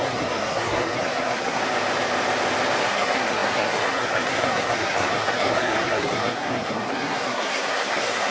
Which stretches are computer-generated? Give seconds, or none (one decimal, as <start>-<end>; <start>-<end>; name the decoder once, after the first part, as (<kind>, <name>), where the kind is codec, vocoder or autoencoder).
0.0-1.6 (codec, SNAC); 2.8-8.3